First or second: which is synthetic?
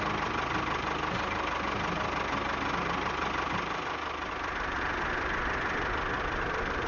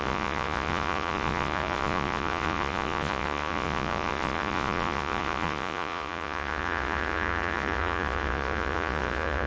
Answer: second